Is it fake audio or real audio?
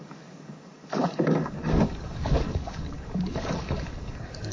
fake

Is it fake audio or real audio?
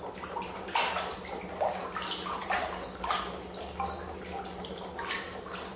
real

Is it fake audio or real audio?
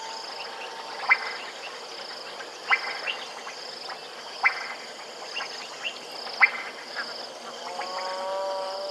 real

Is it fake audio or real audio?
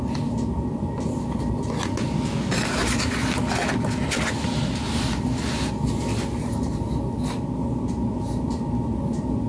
real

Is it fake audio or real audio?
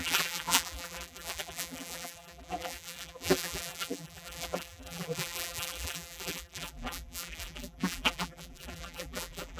fake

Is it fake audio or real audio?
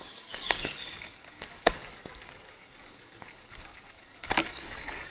fake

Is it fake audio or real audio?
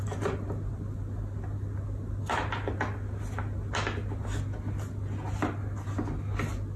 real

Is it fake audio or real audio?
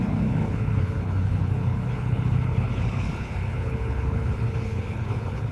fake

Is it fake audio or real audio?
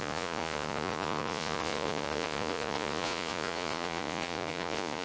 fake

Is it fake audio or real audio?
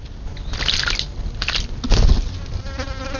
real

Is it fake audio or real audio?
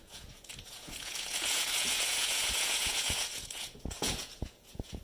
fake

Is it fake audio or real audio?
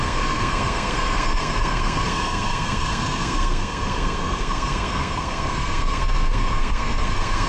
fake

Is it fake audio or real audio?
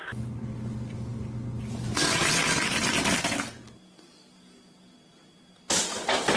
real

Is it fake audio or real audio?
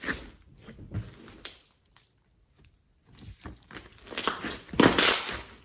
real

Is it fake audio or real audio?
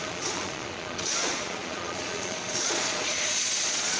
fake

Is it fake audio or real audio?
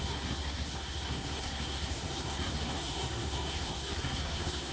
fake